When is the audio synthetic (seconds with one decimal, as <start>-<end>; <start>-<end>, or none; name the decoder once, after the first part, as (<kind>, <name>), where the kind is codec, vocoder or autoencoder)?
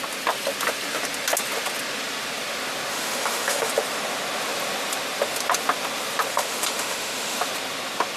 2.9-3.7 (autoencoder, DAC-VAE); 6.3-7.4